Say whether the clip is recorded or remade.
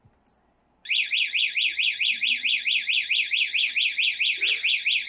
recorded